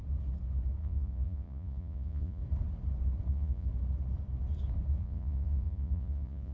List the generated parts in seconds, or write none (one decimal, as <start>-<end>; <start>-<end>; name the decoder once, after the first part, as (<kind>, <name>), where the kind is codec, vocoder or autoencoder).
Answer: 0.8-2.4 (vocoder, Vocos); 3.3-3.7; 5.0-6.5